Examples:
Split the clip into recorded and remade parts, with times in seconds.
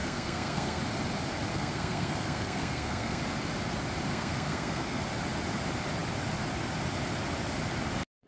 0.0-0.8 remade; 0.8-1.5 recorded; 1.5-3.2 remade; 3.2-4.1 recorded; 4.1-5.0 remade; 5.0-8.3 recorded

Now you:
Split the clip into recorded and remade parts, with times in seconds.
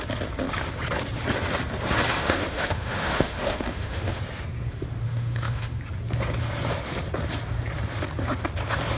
0.0-2.2 recorded; 2.2-4.2 remade; 4.2-5.0 recorded; 5.0-5.8 remade; 5.8-9.0 recorded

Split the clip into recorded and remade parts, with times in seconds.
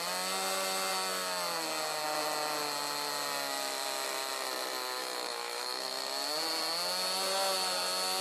0.0-5.0 recorded; 5.0-6.0 remade; 6.0-8.2 recorded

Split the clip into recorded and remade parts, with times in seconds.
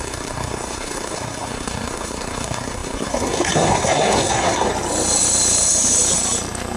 0.0-4.7 remade; 4.7-6.8 recorded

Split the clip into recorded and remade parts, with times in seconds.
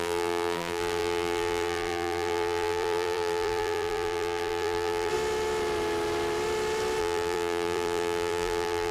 0.0-5.1 remade; 5.1-7.0 recorded; 7.0-8.9 remade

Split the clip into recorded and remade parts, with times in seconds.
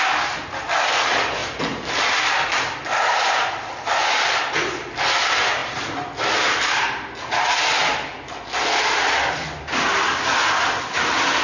0.0-1.4 recorded; 1.4-4.5 remade; 4.5-5.6 recorded; 5.6-6.8 remade; 6.8-7.8 recorded; 7.8-8.4 remade; 8.4-11.4 recorded